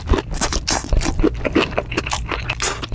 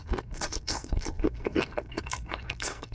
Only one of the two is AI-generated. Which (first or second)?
second